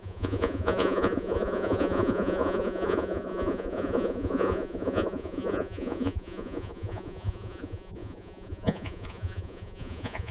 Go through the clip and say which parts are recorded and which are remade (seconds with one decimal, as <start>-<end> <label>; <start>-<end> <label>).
0.0-10.3 remade